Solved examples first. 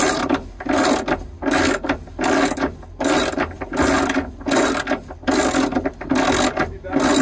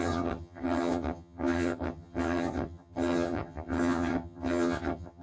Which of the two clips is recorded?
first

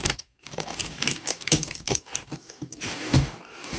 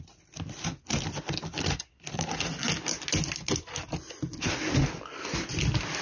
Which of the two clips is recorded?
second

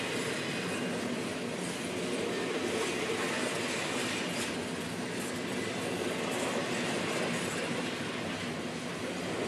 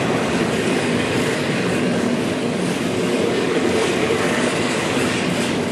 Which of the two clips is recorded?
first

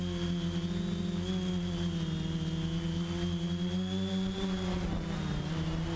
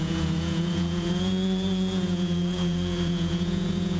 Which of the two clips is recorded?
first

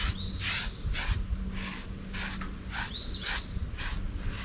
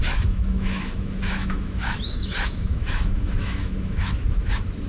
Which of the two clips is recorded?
first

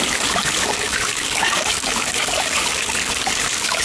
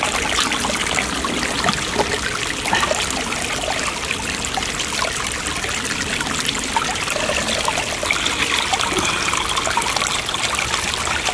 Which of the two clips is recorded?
second